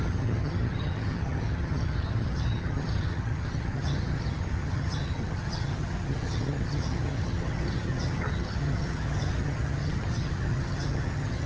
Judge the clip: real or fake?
fake